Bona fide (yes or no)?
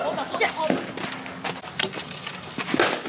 yes